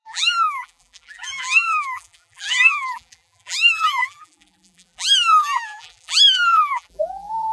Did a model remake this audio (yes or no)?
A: yes